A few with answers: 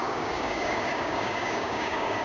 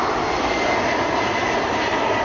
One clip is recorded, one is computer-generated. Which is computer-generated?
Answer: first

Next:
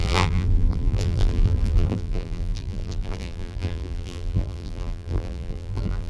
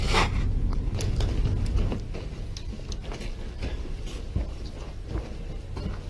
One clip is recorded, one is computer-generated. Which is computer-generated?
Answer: first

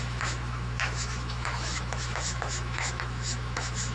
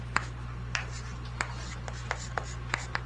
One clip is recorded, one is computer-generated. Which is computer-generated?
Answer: first